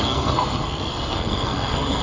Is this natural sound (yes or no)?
no